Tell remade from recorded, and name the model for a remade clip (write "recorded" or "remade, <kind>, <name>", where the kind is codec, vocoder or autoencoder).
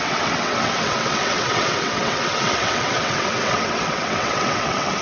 remade, vocoder, WaveNeXt